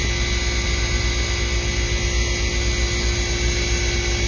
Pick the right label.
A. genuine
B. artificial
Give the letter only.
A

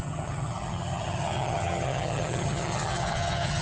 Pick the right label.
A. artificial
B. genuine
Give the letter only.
A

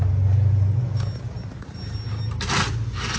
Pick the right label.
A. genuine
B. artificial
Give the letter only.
A